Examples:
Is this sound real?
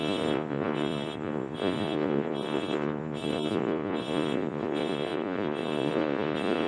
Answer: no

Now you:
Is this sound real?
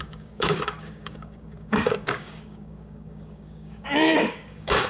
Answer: no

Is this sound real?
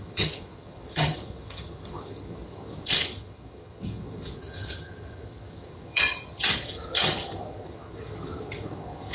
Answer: no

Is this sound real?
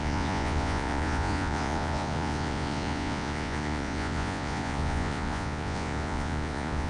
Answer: no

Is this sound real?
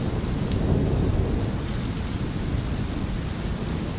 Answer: yes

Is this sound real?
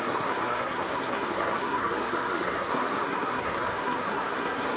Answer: no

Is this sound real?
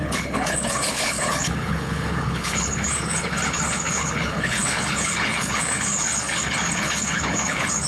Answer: no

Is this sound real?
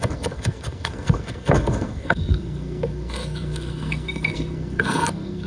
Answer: no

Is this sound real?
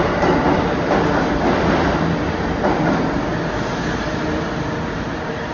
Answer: yes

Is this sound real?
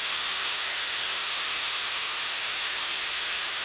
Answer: no